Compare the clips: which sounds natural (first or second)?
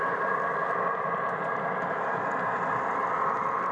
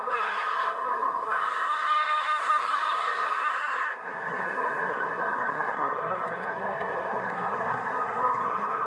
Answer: first